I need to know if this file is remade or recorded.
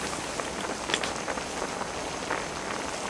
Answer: recorded